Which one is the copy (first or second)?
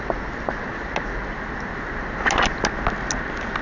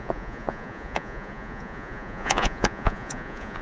second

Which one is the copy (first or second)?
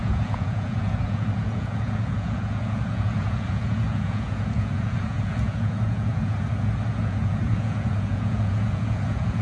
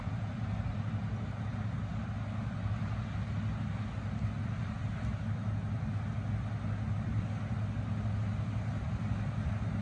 first